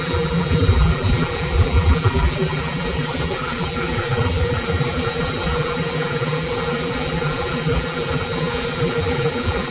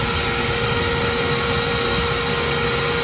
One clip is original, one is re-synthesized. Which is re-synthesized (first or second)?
first